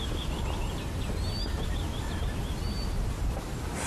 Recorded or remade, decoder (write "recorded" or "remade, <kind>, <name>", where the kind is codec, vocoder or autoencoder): recorded